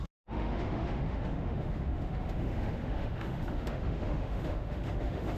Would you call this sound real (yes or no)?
no